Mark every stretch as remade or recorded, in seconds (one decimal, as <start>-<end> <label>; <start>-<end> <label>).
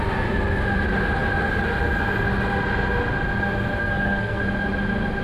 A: 0.0-3.8 recorded; 3.8-4.4 remade; 4.4-5.2 recorded